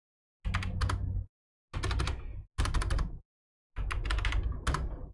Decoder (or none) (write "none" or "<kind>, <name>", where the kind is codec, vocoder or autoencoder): none